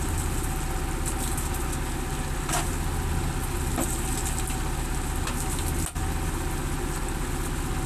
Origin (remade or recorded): recorded